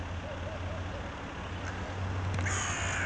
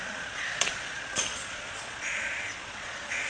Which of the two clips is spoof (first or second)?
second